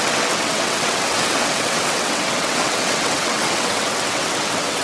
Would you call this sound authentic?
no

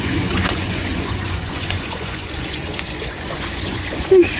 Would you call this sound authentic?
no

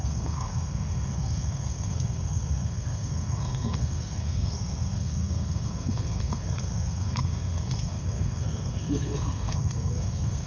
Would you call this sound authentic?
no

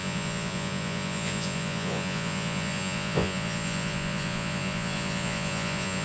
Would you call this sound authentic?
no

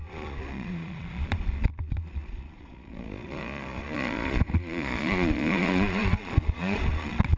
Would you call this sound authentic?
no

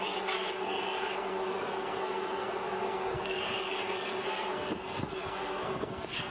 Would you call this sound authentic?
no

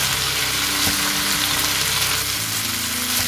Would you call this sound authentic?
yes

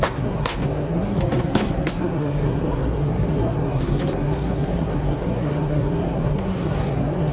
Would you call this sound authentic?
no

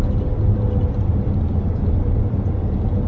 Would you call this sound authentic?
yes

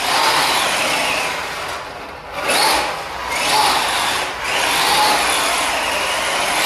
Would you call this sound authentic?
yes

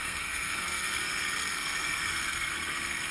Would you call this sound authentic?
no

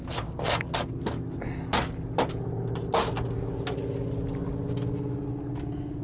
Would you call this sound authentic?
yes